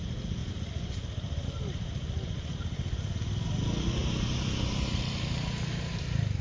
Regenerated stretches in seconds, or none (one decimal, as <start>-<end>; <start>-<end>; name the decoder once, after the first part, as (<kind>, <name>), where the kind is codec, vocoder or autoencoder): 4.0-6.4 (vocoder, BigVGAN v2)